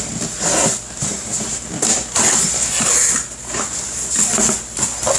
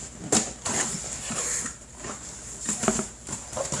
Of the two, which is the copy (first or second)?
second